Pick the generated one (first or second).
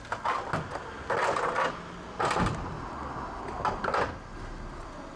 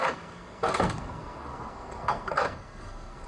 second